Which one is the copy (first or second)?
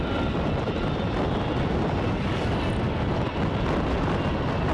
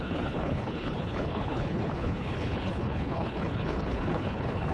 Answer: second